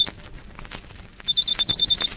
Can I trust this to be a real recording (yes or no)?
yes